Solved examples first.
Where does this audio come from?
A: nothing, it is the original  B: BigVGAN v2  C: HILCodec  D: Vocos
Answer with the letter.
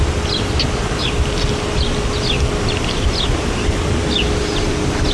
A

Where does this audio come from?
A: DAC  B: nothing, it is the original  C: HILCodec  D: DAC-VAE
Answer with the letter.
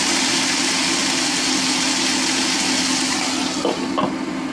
B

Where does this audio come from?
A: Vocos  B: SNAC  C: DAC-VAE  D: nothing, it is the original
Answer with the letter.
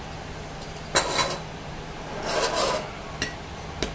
D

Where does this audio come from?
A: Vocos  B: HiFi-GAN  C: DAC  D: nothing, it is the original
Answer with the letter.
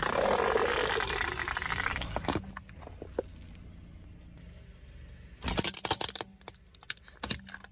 D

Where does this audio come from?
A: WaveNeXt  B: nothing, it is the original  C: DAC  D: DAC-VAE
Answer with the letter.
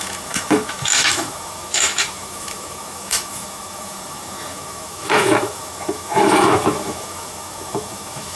D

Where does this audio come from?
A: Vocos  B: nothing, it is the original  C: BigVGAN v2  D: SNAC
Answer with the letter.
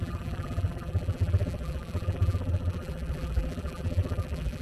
C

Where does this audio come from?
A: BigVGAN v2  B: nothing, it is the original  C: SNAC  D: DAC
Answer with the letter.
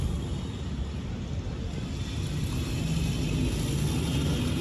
B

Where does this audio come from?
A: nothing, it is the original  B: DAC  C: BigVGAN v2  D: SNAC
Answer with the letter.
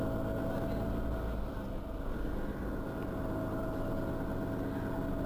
A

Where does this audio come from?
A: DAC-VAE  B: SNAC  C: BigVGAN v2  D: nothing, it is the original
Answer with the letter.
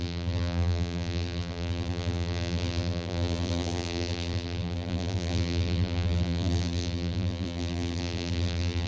C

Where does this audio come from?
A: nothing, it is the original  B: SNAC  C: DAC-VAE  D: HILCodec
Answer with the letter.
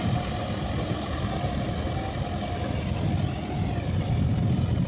A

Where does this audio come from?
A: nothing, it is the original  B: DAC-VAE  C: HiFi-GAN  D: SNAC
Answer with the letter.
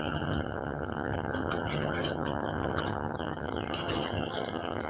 C